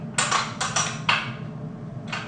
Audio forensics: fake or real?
real